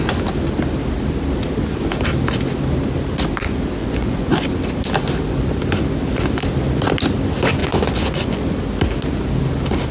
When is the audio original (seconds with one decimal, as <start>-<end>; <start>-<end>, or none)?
0.0-3.8; 4.4-7.6; 8.4-9.9